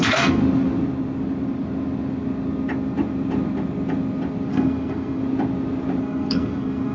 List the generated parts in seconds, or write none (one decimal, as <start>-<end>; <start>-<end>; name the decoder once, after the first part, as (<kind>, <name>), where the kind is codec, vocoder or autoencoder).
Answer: 0.0-0.4 (codec, SNAC); 4.5-5.2; 6.0-6.9